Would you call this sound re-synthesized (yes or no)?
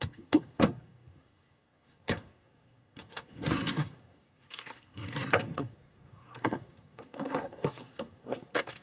yes